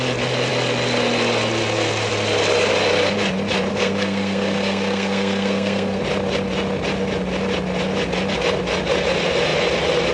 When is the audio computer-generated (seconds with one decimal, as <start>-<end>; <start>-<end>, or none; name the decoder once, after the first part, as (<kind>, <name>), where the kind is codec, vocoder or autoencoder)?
3.7-6.0 (codec, SNAC)